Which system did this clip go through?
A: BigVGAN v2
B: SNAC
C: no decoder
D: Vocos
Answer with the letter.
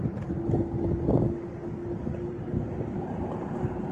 C